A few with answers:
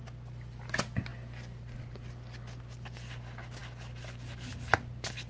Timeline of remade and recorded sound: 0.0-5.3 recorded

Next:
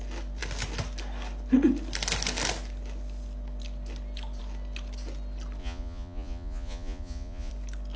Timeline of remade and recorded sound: 0.0-5.6 recorded; 5.6-7.5 remade; 7.5-8.0 recorded

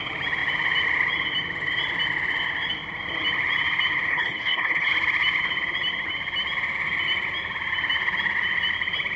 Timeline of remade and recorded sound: 0.0-4.1 recorded; 4.1-4.9 remade; 4.9-9.2 recorded

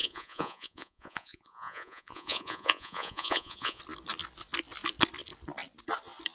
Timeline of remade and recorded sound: 0.0-3.8 remade; 3.8-6.3 recorded

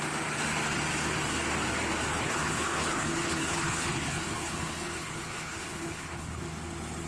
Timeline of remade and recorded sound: 0.0-2.1 recorded; 2.1-6.4 remade; 6.4-7.1 recorded

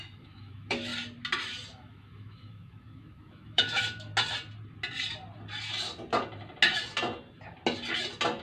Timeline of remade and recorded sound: 0.0-0.9 remade; 0.9-1.7 recorded; 1.7-4.1 remade; 4.1-8.4 recorded

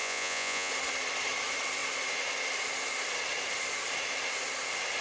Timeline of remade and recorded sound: 0.0-0.7 remade; 0.7-5.0 recorded